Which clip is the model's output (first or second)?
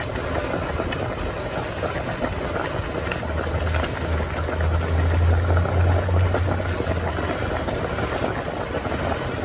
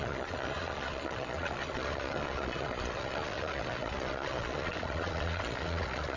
second